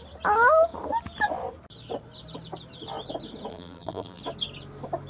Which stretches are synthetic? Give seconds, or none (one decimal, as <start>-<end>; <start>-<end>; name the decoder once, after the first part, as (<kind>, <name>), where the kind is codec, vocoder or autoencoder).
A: 3.5-4.2 (vocoder, BigVGAN v2)